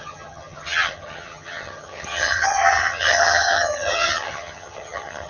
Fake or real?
fake